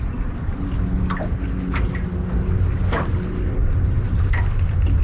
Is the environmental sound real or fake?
real